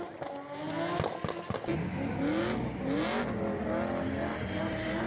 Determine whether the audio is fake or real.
real